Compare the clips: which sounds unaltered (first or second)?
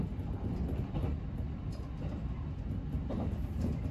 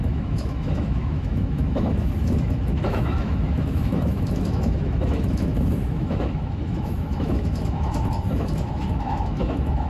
first